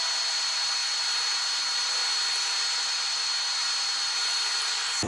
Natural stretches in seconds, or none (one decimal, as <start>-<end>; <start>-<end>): 0.0-5.1